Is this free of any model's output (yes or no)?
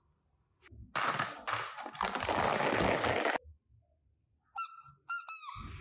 yes